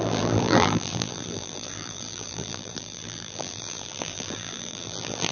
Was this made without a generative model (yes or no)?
no